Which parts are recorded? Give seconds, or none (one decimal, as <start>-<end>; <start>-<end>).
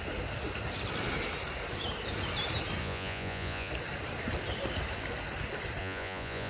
0.0-2.8; 3.7-5.8